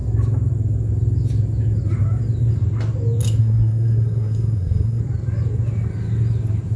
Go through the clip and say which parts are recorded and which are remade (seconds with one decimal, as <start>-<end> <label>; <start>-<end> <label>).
0.0-3.4 recorded; 3.4-5.0 remade; 5.0-6.8 recorded